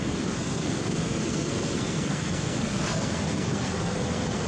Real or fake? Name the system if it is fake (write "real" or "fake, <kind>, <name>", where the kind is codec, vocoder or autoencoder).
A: fake, codec, SNAC